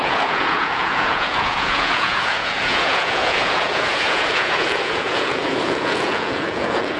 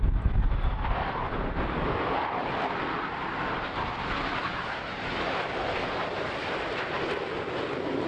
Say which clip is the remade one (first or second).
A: first